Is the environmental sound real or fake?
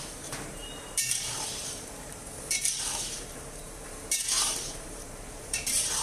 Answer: fake